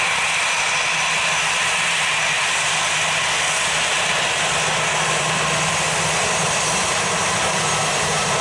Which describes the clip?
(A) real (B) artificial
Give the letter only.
A